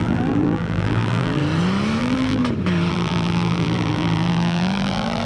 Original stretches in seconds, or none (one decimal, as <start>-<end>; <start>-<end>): 1.4-2.0; 2.4-2.9